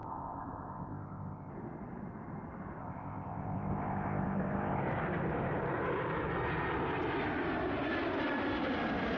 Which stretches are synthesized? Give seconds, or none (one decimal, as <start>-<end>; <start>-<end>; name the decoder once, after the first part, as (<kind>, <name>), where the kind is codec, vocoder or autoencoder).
0.0-1.5 (codec, ZipCodec); 2.8-4.8